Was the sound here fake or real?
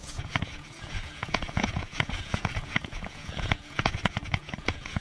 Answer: fake